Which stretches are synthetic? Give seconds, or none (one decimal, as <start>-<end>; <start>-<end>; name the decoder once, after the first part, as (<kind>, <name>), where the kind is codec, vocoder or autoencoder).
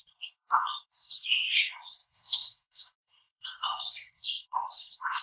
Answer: 0.0-5.2 (codec, SNAC)